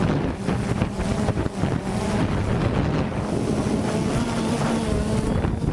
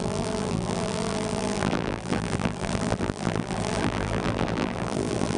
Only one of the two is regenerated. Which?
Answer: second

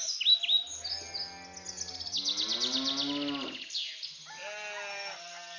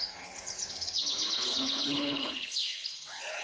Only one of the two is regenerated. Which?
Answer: second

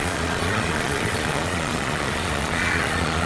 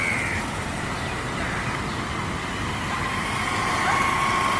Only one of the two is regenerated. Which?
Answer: first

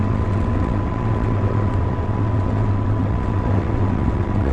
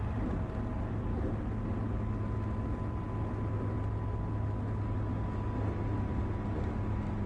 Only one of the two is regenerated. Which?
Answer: first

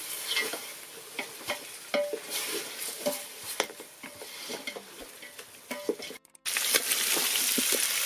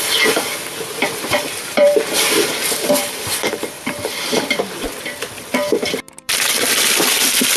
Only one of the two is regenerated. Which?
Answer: second